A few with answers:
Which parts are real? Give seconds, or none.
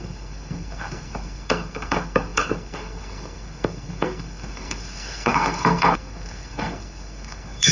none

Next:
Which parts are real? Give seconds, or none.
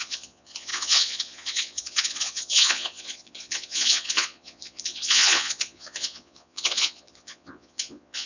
none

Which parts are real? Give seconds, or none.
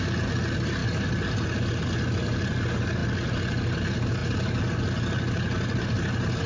0.0-6.5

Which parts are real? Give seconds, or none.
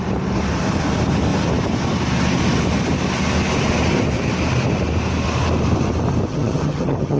0.0-6.3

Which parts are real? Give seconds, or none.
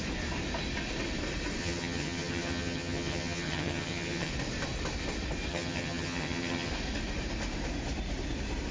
0.0-1.6; 4.3-5.5; 6.7-8.7